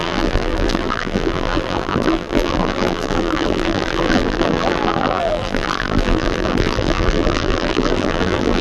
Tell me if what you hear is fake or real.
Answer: fake